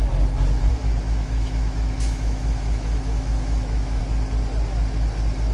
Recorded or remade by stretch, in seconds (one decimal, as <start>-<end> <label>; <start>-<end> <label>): 0.0-0.7 recorded; 0.7-4.0 remade; 4.0-5.5 recorded